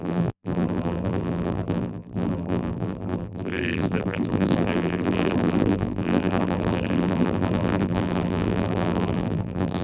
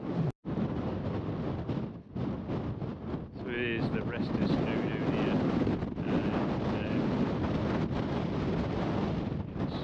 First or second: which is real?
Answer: second